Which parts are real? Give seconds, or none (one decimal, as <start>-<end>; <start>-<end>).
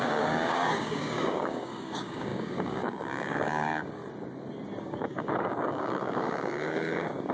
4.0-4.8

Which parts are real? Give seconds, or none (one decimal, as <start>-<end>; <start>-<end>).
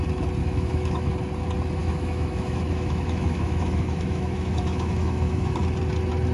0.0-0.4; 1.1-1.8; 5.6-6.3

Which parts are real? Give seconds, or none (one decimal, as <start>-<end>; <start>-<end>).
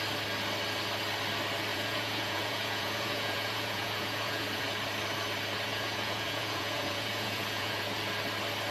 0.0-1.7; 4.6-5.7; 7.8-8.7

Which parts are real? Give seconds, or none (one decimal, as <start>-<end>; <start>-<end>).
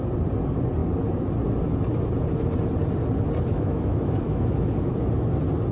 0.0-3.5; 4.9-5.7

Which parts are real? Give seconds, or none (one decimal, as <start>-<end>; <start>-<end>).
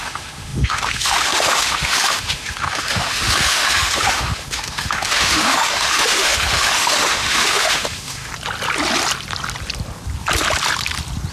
8.3-11.3